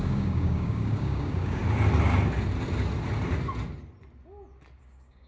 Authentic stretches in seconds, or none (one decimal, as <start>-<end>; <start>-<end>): 1.6-4.8